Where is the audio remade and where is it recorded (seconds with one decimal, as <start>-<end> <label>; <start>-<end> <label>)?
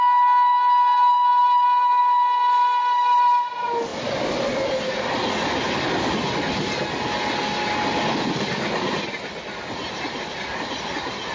0.0-11.3 recorded